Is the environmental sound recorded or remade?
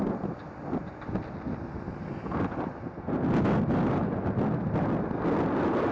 recorded